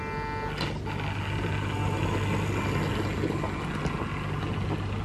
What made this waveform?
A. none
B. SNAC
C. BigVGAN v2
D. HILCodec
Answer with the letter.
A